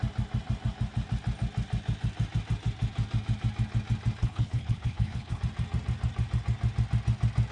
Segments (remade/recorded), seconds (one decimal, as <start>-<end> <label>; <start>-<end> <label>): 0.0-4.2 recorded; 4.2-5.4 remade; 5.4-7.5 recorded